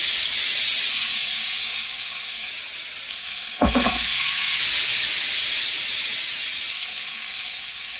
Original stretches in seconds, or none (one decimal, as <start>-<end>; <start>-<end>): 0.0-0.9; 2.5-3.1; 4.6-6.7

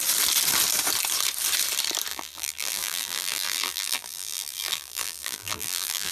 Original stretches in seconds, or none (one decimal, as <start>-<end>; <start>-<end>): 0.0-2.1

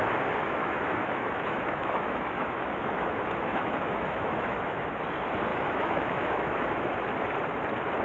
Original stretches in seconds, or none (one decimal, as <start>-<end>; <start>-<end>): 0.0-0.4; 4.8-5.5; 6.7-8.0

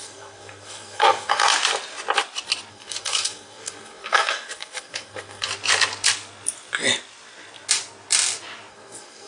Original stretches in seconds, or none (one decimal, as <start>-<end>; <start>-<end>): 1.4-2.7; 5.5-8.7

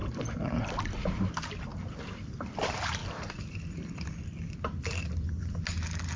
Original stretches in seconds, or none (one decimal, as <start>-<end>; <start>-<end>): 0.6-1.7; 2.3-3.0; 5.5-6.2

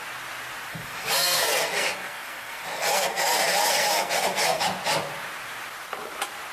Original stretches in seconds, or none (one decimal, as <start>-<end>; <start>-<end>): 0.0-0.7; 4.6-6.5

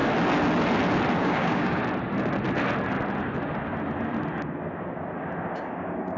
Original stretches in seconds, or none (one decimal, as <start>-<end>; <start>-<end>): 0.0-1.2; 1.8-5.5

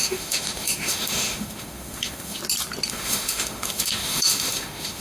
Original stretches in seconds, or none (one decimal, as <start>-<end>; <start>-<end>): 2.4-2.9